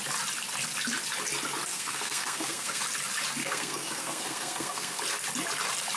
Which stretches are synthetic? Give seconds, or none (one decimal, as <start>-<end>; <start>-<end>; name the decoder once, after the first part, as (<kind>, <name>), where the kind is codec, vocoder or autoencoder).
1.7-2.8 (codec, SNAC); 3.4-5.0